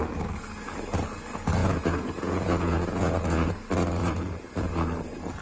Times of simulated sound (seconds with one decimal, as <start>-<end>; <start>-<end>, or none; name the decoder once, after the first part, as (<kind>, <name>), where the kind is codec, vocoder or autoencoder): 1.6-3.5 (vocoder, Vocos); 4.0-4.7